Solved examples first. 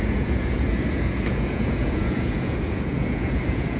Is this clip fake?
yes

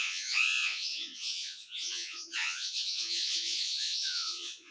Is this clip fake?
yes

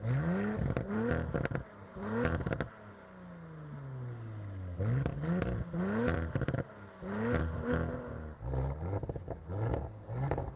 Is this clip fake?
no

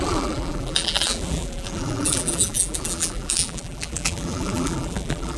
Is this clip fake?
yes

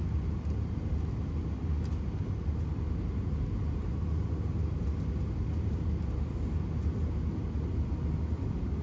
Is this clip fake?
no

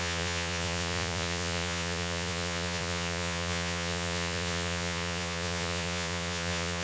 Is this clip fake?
yes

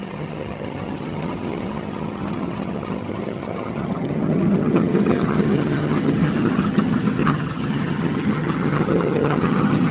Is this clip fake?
yes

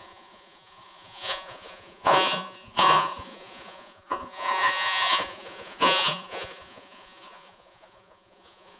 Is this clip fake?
yes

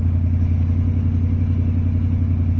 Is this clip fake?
no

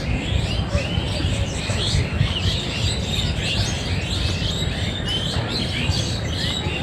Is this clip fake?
no